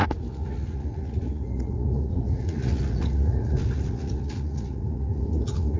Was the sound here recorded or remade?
remade